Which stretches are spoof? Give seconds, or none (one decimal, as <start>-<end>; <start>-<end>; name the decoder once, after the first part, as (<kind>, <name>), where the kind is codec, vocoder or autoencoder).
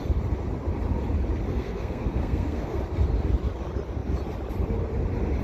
1.5-2.8 (codec, SNAC)